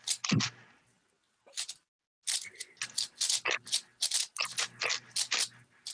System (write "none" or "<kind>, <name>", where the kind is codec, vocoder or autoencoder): none